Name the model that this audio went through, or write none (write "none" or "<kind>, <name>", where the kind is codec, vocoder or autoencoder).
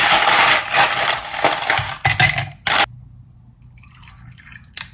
none